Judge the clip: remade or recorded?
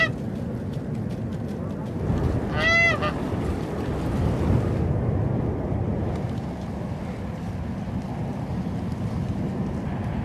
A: recorded